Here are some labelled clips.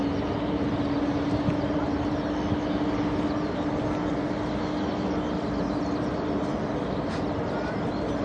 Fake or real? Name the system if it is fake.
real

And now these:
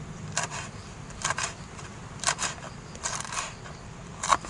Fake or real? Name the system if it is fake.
fake, vocoder, BigVGAN v2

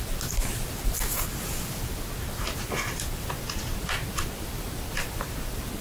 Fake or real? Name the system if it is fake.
real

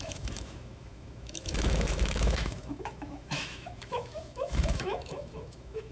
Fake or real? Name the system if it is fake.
fake, autoencoder, DAC-VAE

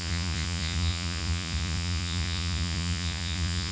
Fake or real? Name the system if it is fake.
fake, vocoder, Vocos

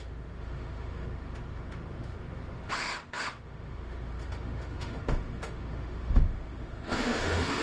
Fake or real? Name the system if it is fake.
fake, autoencoder, DAC-VAE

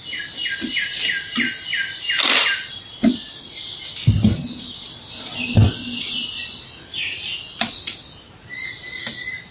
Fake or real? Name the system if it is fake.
real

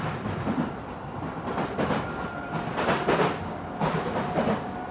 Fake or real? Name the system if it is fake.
real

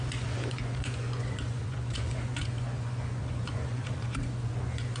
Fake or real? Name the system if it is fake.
fake, vocoder, Vocos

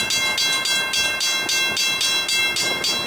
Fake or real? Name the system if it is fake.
real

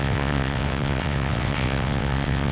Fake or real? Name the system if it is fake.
fake, vocoder, WaveNeXt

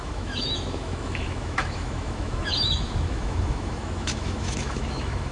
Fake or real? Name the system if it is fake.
fake, autoencoder, DAC-VAE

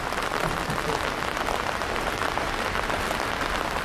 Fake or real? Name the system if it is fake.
real